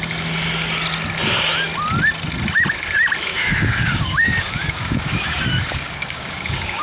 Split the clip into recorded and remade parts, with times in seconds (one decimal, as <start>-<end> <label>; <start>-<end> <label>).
0.0-3.3 recorded; 3.3-6.8 remade